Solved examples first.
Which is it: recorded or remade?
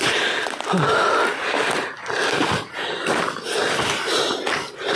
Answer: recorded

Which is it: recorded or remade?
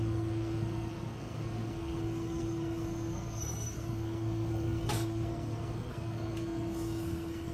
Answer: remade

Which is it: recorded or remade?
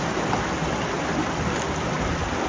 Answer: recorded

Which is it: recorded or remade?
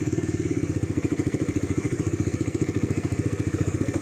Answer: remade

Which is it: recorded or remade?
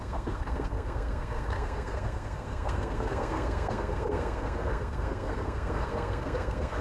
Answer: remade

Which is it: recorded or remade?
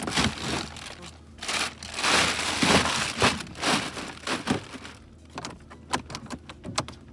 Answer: recorded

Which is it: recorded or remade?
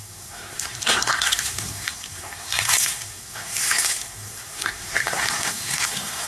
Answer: remade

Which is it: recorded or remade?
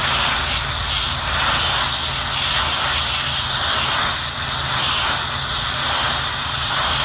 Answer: recorded